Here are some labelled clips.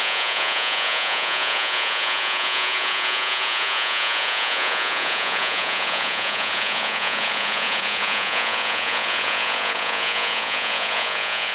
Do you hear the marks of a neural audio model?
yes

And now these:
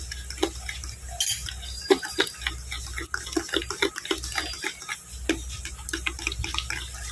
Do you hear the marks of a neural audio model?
no